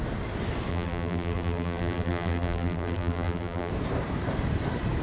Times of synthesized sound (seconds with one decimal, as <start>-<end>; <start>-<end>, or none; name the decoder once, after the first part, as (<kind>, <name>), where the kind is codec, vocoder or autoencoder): 0.7-3.7 (vocoder, BigVGAN v2)